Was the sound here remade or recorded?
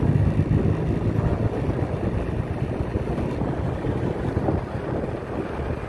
recorded